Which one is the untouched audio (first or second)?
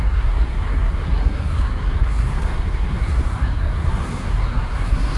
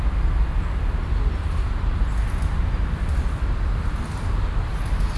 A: second